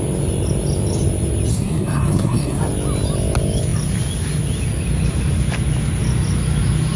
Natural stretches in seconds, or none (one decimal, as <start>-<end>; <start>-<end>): 0.0-1.5; 2.6-7.0